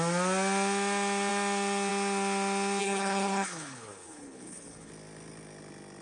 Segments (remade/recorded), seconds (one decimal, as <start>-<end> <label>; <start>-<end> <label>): 0.0-2.8 recorded; 2.8-4.9 remade; 4.9-6.0 recorded